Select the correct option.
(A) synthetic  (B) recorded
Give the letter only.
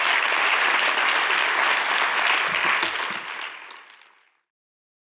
B